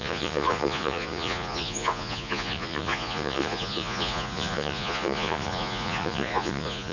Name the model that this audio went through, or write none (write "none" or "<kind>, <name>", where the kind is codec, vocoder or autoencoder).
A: vocoder, Vocos